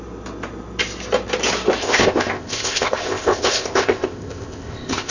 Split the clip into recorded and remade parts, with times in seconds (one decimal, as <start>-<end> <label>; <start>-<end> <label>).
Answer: 0.0-1.8 recorded; 1.8-5.1 remade